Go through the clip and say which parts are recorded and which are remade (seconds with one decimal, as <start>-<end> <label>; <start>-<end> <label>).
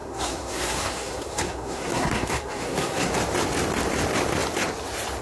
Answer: 0.0-3.1 remade; 3.1-5.2 recorded